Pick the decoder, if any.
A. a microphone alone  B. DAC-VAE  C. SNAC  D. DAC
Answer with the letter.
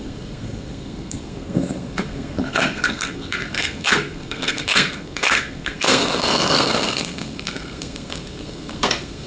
C